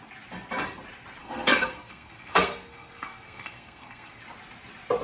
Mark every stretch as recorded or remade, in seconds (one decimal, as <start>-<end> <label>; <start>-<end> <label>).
0.0-1.2 recorded; 1.2-4.2 remade; 4.2-5.0 recorded